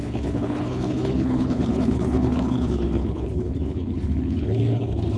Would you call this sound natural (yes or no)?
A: no